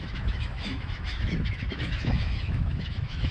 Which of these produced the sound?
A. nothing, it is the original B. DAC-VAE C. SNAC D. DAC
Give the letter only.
B